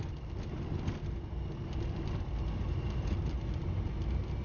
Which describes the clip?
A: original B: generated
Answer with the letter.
A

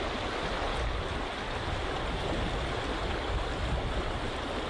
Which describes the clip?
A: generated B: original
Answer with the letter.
B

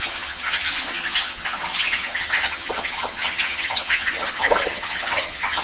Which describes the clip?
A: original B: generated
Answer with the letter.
B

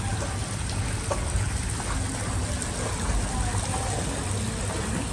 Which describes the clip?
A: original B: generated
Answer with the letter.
A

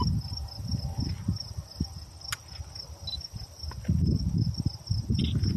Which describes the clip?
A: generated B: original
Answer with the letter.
B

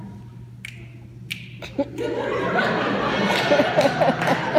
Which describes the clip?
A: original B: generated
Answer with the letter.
A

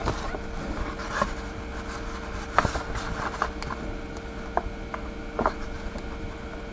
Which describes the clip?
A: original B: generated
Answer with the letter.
A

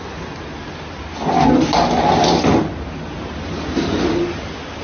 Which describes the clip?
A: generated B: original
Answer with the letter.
B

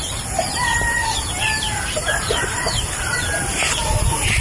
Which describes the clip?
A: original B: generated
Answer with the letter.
A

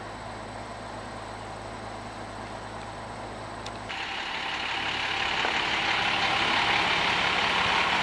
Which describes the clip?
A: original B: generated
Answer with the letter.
A